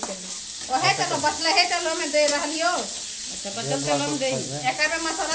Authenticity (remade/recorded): recorded